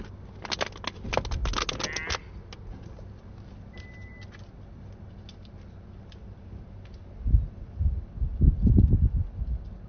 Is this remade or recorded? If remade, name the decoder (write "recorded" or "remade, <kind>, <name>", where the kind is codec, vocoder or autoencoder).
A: recorded